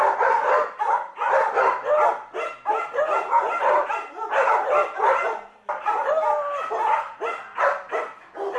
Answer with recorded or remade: recorded